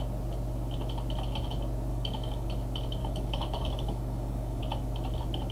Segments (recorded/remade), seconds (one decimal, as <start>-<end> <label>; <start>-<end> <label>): 0.0-1.9 recorded; 1.9-2.5 remade; 2.5-3.0 recorded; 3.0-4.6 remade; 4.6-5.5 recorded